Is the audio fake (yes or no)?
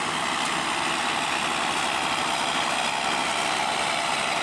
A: no